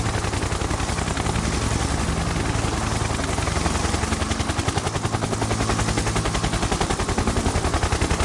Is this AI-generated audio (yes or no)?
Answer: no